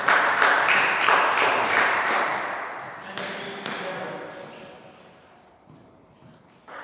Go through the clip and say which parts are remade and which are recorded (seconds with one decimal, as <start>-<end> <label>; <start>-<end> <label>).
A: 0.0-2.3 remade; 2.3-5.5 recorded; 5.5-6.8 remade